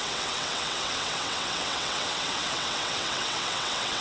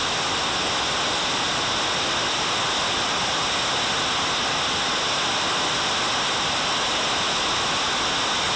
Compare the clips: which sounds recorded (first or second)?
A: second